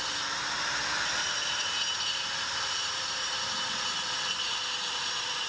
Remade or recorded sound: recorded